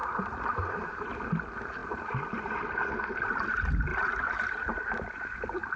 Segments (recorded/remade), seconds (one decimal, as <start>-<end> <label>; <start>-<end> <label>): 0.0-1.1 remade; 1.1-3.9 recorded; 3.9-4.7 remade; 4.7-5.8 recorded